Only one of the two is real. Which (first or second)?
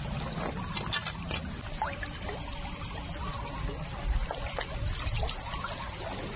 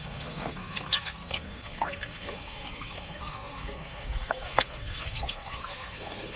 first